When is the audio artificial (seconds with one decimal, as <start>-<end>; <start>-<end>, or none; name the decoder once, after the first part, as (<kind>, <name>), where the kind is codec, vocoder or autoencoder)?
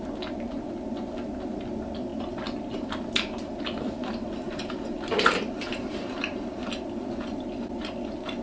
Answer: none